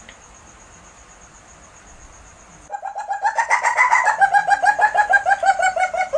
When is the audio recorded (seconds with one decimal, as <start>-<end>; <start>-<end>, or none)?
0.0-4.4